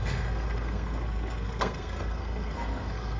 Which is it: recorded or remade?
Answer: remade